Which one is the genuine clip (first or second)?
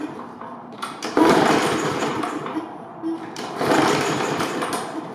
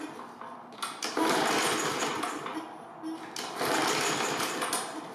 second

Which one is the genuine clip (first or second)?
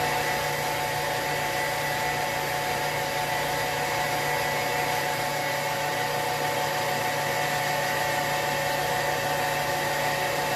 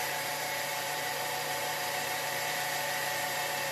first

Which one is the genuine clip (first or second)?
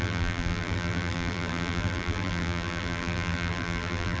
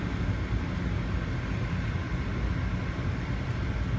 second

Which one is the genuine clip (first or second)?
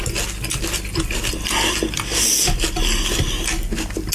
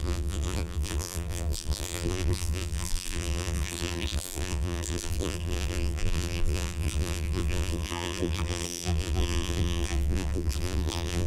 first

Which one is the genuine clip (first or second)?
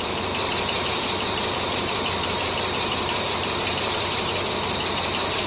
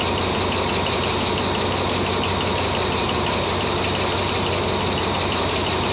second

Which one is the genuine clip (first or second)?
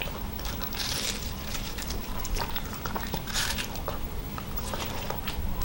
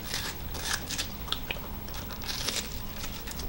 second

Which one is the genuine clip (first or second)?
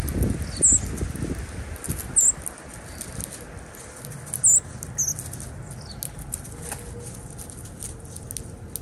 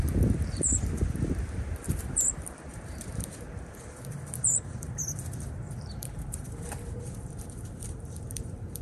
first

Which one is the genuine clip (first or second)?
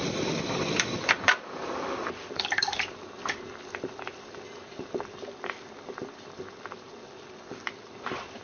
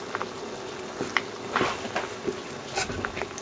second